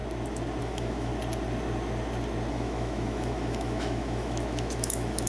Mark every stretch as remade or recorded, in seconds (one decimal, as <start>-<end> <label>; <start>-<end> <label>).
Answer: 0.0-0.6 recorded; 0.6-1.1 remade; 1.1-2.5 recorded; 2.5-5.3 remade